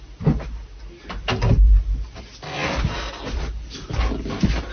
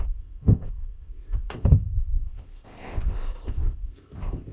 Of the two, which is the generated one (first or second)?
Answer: second